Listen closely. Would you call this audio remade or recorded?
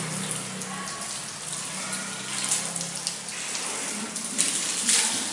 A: recorded